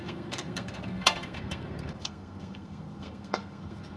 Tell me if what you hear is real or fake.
fake